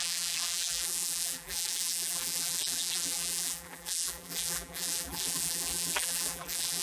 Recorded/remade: remade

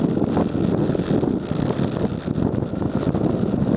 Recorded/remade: recorded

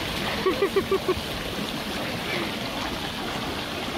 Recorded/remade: recorded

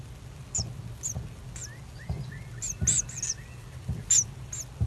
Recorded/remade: recorded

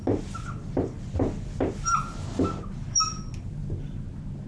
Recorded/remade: recorded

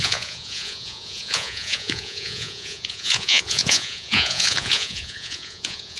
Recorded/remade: remade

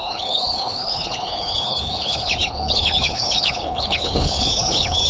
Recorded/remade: remade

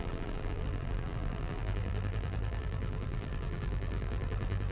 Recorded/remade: remade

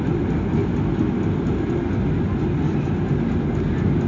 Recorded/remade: recorded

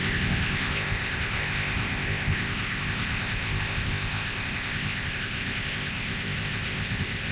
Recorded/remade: remade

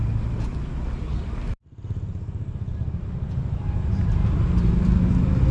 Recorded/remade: recorded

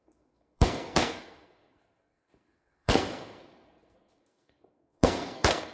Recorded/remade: remade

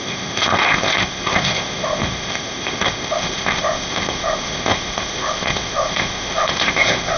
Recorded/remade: remade